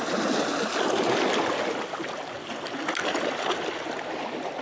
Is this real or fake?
real